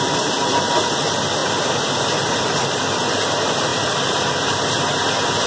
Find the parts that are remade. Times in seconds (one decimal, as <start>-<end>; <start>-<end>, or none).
1.4-2.0; 3.7-4.8